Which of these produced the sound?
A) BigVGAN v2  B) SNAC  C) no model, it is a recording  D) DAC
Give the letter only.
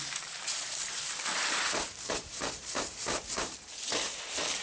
A